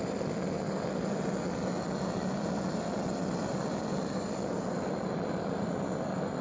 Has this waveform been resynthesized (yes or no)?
no